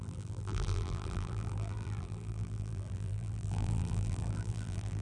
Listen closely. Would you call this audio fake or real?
fake